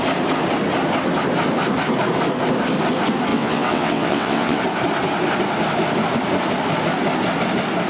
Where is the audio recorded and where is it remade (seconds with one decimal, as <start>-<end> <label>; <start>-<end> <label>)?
0.0-3.3 recorded; 3.3-4.6 remade; 4.6-7.9 recorded